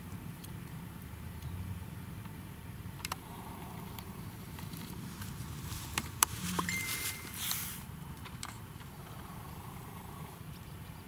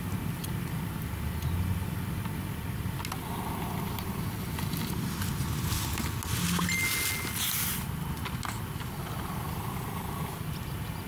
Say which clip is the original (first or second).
second